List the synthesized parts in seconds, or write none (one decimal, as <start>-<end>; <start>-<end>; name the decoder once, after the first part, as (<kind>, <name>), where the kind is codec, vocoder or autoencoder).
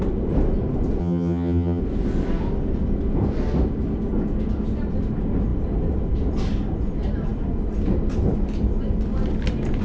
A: 1.0-1.8 (vocoder, HiFi-GAN)